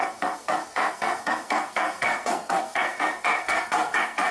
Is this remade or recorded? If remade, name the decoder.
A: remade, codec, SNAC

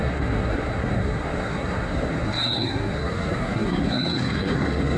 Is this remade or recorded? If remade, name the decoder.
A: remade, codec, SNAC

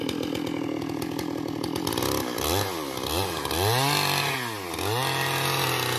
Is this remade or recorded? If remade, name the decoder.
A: recorded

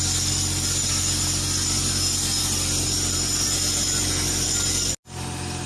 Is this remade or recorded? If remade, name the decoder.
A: recorded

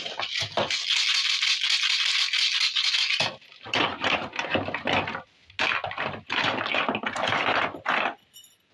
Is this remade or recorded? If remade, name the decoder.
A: recorded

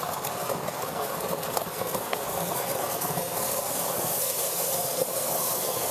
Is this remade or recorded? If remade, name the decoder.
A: remade, codec, SNAC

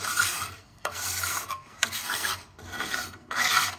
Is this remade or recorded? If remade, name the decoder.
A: remade, codec, SNAC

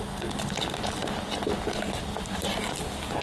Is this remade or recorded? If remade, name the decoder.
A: recorded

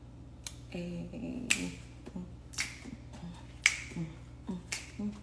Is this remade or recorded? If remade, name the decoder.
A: recorded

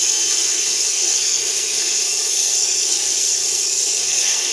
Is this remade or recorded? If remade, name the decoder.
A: remade, codec, SNAC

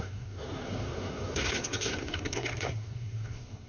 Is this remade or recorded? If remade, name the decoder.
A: remade, codec, SNAC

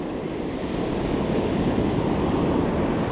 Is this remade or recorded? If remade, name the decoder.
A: recorded